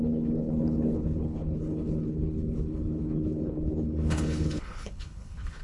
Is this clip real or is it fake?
fake